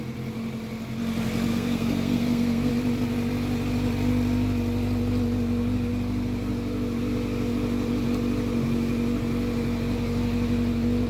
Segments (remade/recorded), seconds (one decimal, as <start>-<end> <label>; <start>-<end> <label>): 0.0-1.5 recorded; 1.5-2.7 remade; 2.7-11.1 recorded